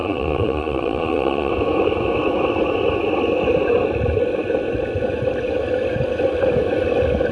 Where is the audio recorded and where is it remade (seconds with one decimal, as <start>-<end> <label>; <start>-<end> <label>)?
0.0-1.5 remade; 1.5-7.3 recorded